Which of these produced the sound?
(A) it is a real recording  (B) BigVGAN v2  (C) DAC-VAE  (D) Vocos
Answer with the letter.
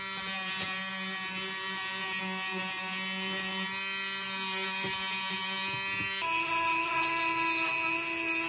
A